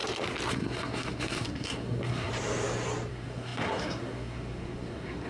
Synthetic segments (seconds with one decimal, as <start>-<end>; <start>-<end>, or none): 0.5-2.3; 3.1-5.3